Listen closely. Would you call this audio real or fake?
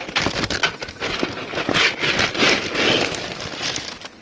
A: real